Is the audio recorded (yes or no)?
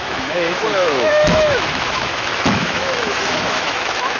no